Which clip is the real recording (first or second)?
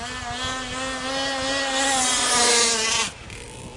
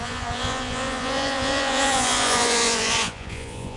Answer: first